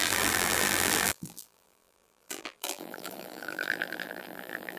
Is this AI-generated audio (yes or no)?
yes